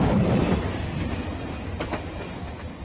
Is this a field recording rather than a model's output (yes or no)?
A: yes